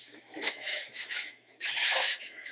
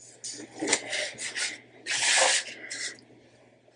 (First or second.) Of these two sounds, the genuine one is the second